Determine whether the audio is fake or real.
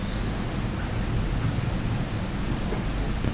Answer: real